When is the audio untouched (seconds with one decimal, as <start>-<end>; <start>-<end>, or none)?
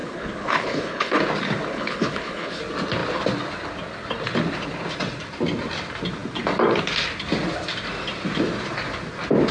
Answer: 1.2-1.7; 2.6-9.5